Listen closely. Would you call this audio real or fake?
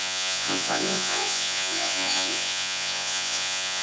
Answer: fake